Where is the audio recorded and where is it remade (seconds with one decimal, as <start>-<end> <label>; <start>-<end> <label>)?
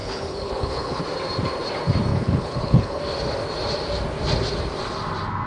0.0-1.0 remade; 1.0-2.1 recorded; 2.1-3.0 remade; 3.0-5.5 recorded